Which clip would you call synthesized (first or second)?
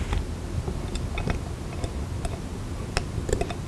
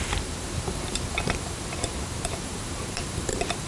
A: second